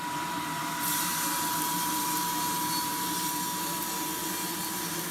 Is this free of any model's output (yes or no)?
yes